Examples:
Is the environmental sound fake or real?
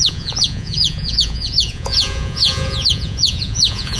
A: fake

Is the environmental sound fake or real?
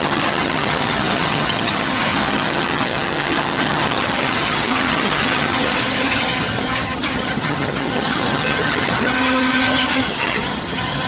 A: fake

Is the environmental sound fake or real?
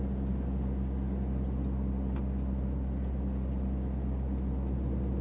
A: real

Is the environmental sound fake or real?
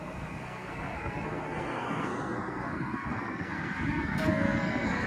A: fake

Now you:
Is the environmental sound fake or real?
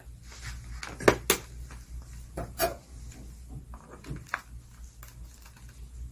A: real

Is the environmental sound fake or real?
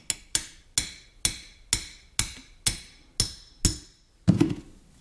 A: real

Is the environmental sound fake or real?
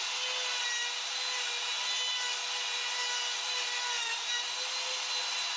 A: real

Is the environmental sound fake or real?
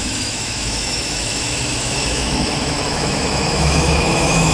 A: fake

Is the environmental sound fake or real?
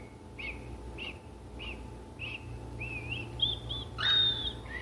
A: real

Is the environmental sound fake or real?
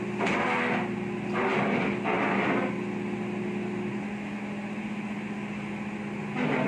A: real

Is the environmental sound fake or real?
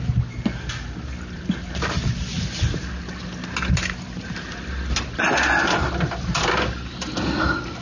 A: real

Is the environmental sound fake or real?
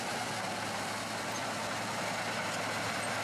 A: real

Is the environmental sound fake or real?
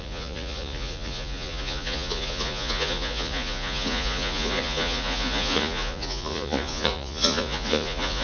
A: fake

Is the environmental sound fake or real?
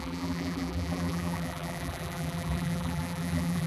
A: fake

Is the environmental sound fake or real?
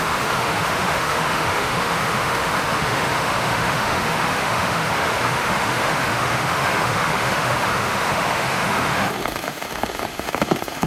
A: fake